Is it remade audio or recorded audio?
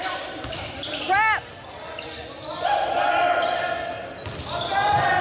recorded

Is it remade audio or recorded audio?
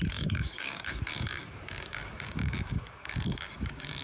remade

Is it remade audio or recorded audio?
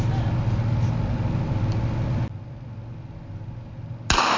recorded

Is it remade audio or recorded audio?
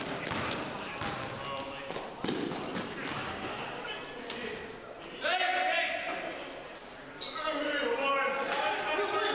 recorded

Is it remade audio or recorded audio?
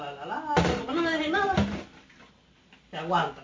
recorded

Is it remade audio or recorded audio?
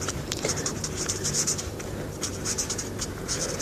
remade